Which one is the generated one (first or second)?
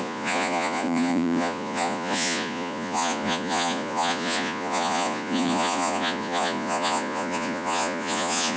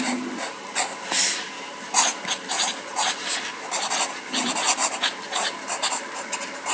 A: first